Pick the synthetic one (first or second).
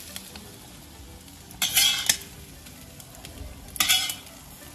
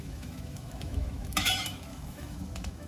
second